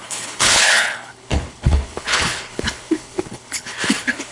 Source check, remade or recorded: remade